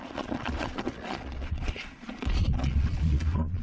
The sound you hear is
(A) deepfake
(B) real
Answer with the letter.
A